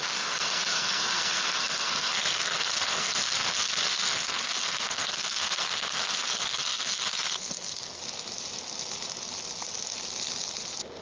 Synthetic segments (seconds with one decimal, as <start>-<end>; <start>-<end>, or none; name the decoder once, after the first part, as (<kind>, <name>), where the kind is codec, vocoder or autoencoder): 0.0-8.0 (codec, SNAC)